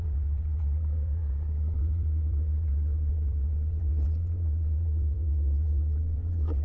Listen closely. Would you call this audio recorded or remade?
remade